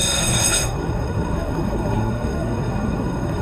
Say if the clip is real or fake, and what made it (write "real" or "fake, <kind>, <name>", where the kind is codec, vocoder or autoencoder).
fake, codec, SNAC